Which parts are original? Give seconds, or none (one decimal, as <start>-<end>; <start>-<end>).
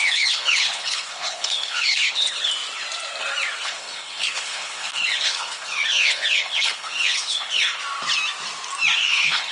2.5-3.6; 7.8-9.0